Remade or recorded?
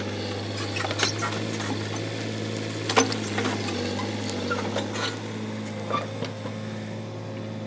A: recorded